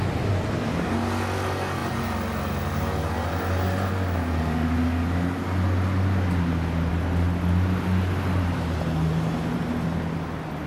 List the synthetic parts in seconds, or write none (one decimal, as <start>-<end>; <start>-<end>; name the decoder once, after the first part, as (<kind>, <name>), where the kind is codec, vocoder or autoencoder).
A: none